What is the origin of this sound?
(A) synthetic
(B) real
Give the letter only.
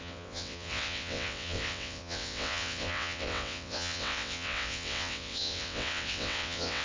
A